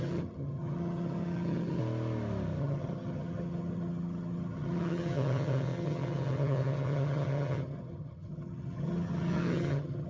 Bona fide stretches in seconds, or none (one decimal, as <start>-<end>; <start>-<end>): 1.8-2.6